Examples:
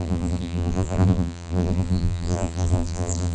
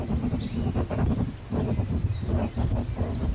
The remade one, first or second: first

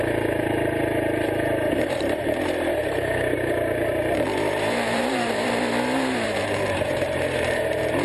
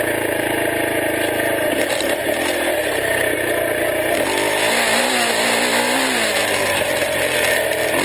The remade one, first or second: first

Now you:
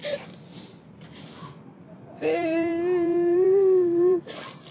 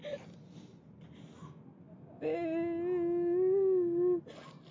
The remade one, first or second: first